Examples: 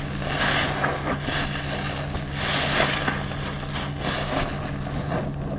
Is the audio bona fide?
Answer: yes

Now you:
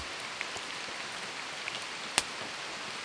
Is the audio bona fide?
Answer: yes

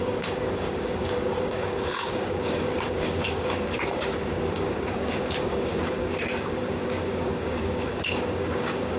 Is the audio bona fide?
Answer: no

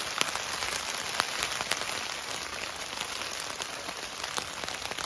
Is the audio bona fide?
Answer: yes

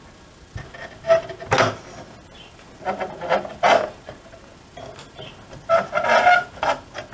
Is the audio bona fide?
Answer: yes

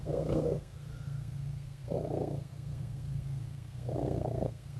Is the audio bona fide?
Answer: no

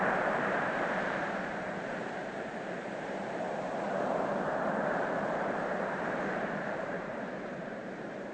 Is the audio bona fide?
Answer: no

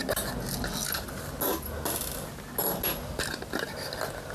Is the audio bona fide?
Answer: yes